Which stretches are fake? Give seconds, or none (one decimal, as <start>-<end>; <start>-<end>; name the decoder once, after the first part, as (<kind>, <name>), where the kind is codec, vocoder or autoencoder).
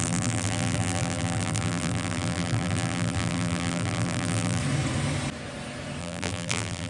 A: 0.0-4.6 (vocoder, BigVGAN v2); 6.0-6.9